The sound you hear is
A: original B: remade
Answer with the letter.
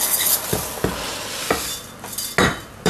A